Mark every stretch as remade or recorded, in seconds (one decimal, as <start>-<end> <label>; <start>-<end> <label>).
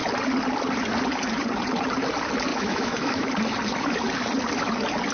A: 0.0-2.5 recorded; 2.5-3.3 remade; 3.3-5.1 recorded